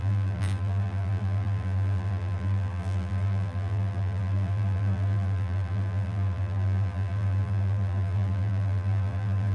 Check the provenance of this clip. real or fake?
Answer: fake